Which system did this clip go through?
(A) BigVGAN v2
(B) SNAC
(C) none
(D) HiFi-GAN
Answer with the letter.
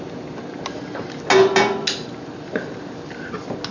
C